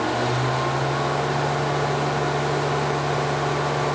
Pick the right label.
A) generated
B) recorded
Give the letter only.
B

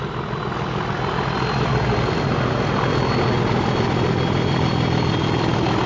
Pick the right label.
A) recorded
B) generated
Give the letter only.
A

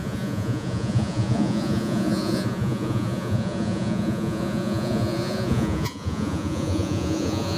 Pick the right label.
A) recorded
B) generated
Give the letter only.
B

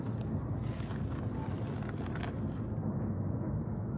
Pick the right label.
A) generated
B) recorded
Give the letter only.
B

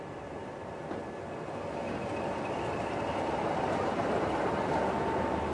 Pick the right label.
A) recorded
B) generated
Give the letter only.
A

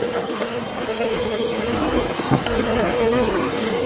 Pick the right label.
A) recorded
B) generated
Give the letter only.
B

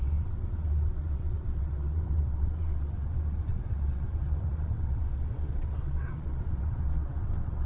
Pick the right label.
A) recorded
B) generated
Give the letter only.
B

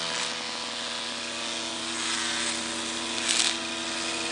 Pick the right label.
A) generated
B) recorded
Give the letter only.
B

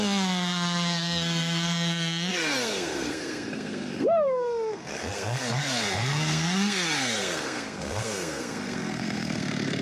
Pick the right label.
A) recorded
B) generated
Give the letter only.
B